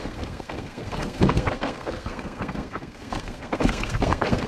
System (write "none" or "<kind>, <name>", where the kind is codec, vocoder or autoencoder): codec, SNAC